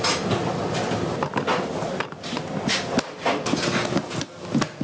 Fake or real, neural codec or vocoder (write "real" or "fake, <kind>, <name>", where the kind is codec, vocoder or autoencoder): real